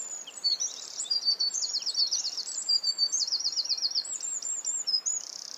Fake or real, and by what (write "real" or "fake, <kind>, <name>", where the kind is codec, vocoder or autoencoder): fake, vocoder, BigVGAN v2